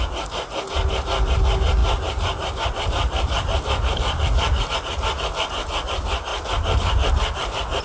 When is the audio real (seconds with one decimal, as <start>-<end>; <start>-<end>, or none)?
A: 0.0-1.8; 4.7-6.3